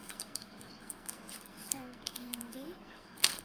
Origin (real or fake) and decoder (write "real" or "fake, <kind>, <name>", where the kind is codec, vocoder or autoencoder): fake, codec, SNAC